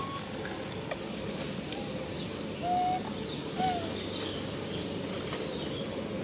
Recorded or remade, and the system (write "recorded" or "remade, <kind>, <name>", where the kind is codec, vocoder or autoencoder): recorded